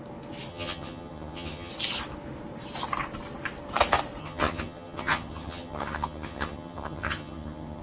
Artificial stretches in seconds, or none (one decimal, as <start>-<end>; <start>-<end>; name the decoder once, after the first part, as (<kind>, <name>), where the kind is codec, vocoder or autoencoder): 0.5-1.7 (vocoder, HiFi-GAN); 4.2-7.8